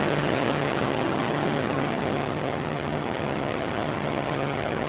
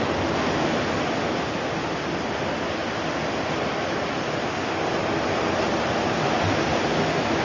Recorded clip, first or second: second